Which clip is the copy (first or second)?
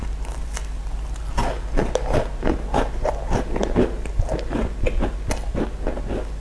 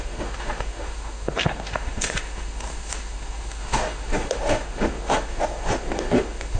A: second